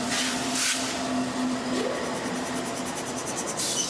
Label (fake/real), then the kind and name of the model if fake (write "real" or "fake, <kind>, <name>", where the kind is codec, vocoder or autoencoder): real